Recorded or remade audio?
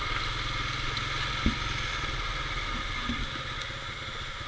recorded